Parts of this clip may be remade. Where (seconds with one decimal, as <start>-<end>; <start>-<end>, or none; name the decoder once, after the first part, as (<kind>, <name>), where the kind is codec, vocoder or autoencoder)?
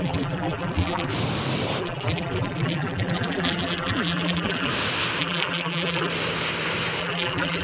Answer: 0.0-1.1 (vocoder, BigVGAN v2); 1.8-4.7; 5.2-6.1; 7.0-7.6